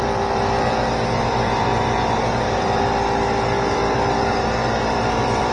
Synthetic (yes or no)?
yes